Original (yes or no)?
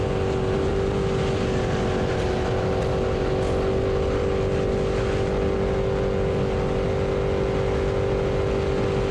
yes